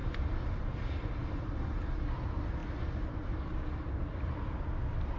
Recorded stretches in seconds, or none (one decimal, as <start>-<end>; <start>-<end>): 0.0-5.2